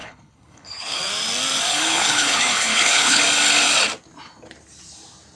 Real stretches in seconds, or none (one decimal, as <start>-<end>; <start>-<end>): 1.0-1.7; 3.2-5.4